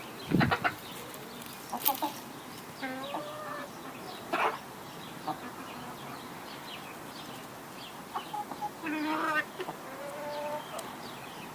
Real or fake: real